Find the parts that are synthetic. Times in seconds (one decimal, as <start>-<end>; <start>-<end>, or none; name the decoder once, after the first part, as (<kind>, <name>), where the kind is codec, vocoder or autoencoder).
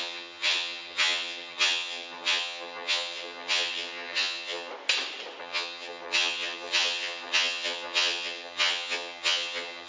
0.0-4.7 (vocoder, HiFi-GAN); 5.4-9.9